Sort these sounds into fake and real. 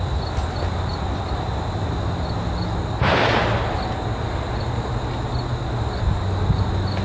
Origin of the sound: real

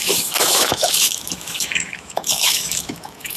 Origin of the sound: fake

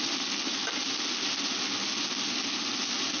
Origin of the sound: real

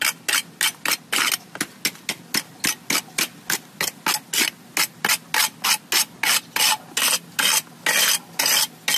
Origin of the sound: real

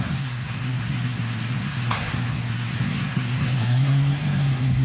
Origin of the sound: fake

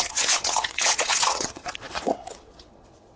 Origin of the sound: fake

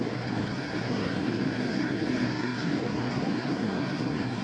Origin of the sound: fake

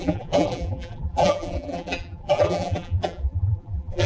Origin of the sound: fake